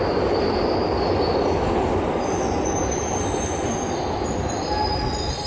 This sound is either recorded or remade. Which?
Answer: recorded